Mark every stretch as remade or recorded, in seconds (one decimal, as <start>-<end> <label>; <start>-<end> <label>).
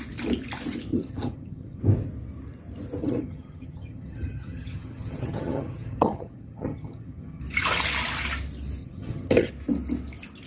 0.0-0.9 recorded; 0.9-1.8 remade; 1.8-3.0 recorded; 3.0-7.4 remade; 7.4-8.8 recorded; 8.8-9.5 remade; 9.5-10.5 recorded